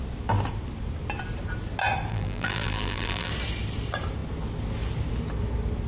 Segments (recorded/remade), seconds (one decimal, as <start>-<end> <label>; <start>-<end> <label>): 0.0-2.1 recorded; 2.1-3.3 remade; 3.3-5.9 recorded

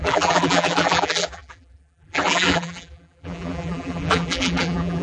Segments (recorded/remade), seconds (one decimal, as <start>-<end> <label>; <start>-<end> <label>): 0.0-5.0 remade

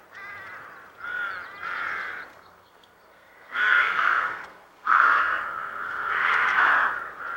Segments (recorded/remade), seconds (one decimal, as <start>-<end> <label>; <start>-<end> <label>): 0.0-2.3 recorded; 2.3-6.7 remade; 6.7-7.4 recorded

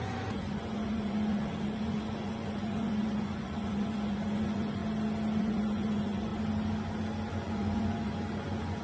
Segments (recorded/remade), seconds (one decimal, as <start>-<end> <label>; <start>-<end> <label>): 0.0-4.8 remade; 4.8-5.4 recorded; 5.4-6.3 remade; 6.3-7.3 recorded; 7.3-8.8 remade